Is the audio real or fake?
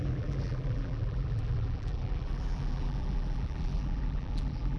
fake